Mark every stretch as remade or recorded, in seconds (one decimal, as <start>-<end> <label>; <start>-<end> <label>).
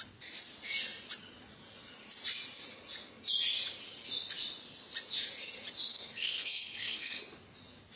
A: 0.0-5.9 recorded; 5.9-7.2 remade; 7.2-8.0 recorded